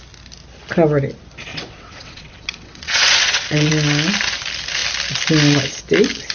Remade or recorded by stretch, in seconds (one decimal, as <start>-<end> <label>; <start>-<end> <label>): 0.0-1.5 recorded; 1.5-3.7 remade; 3.7-6.3 recorded